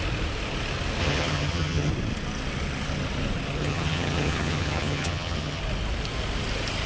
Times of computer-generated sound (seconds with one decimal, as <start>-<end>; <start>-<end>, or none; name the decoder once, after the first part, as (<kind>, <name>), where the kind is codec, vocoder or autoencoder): 1.0-1.9 (vocoder, HiFi-GAN); 3.6-5.6